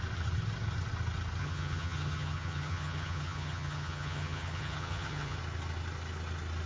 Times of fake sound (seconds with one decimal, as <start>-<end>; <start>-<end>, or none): 1.4-5.4

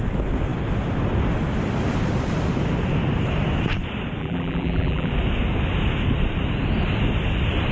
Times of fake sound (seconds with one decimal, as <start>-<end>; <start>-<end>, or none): 4.2-5.1

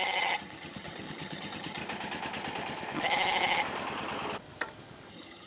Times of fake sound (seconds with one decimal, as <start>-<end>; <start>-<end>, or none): 0.0-1.8; 5.1-5.5

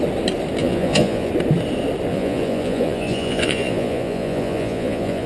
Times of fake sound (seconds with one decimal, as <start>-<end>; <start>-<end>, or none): 0.6-1.3; 2.1-5.3

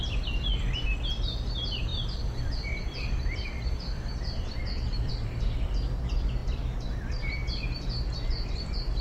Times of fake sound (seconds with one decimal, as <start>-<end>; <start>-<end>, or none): 0.0-6.4; 6.9-7.4; 8.1-9.0